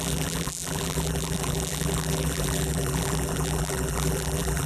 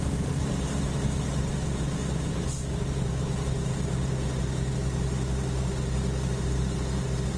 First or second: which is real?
second